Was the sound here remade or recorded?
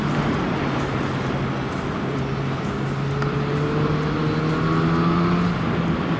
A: recorded